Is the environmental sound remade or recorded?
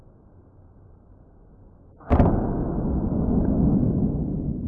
recorded